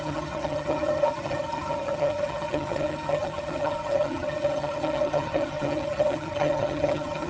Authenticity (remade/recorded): remade